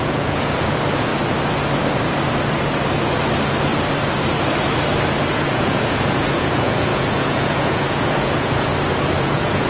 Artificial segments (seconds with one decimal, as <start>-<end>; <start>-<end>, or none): 0.0-1.1; 5.3-8.7; 9.2-9.7